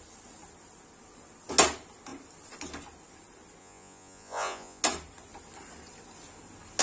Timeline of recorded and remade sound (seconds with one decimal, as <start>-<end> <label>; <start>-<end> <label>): 0.0-3.6 recorded; 3.6-4.8 remade; 4.8-6.8 recorded